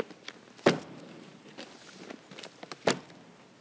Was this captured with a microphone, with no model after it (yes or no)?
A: yes